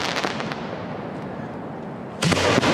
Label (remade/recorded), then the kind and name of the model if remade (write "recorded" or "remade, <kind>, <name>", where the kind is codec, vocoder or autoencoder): recorded